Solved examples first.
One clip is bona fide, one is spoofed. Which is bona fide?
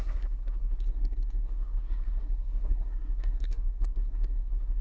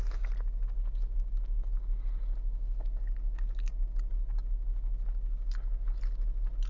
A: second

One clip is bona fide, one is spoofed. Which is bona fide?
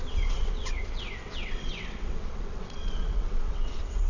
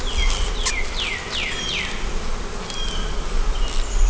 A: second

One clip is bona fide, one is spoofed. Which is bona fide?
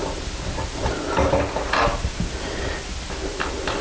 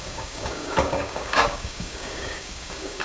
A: first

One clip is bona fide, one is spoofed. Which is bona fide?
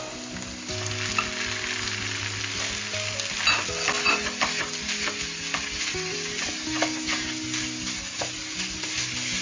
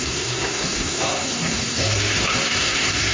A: first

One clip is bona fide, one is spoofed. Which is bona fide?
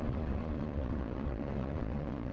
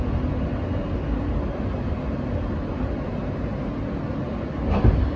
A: second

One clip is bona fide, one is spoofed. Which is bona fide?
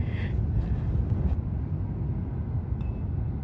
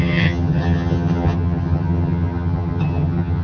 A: first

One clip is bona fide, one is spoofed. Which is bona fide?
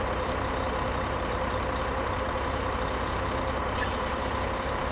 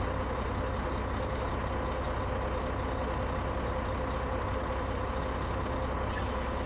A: second